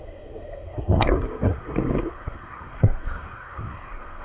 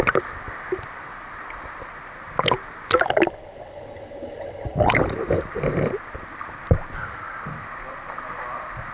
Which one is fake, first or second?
first